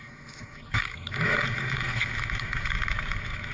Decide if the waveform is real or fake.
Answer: fake